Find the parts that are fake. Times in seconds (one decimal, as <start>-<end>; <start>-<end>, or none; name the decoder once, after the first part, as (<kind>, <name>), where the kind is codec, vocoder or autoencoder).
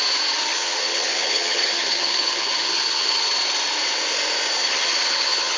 0.4-3.2 (vocoder, HiFi-GAN); 4.6-5.6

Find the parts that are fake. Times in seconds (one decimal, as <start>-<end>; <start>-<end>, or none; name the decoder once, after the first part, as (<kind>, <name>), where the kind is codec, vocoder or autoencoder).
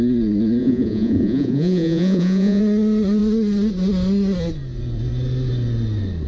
0.6-2.6 (vocoder, Vocos)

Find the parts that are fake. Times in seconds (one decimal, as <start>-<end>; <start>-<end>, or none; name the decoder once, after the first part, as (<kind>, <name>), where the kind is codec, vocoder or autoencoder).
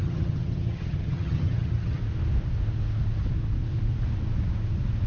0.0-2.0 (vocoder, HiFi-GAN)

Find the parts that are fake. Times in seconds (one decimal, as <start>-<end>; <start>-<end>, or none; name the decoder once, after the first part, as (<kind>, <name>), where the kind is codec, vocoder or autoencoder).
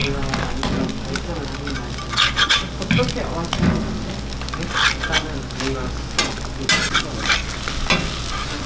none